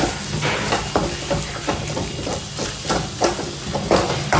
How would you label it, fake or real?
real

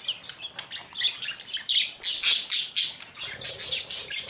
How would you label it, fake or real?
real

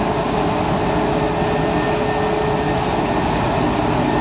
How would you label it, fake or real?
real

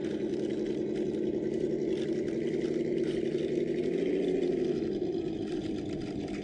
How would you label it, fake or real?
real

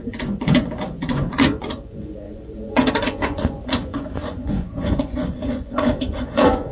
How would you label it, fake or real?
fake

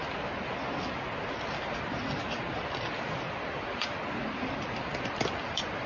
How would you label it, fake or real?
real